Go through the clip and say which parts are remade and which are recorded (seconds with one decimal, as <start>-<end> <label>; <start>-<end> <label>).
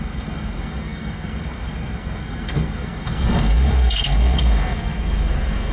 0.0-5.7 remade